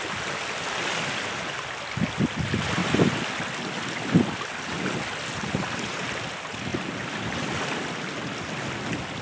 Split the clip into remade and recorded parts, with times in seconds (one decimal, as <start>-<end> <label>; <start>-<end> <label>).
0.0-9.2 recorded

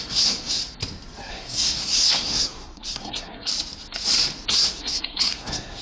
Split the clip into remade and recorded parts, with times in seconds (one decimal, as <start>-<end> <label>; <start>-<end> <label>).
0.0-0.6 remade; 0.6-1.3 recorded; 1.3-3.5 remade; 3.5-4.5 recorded; 4.5-5.8 remade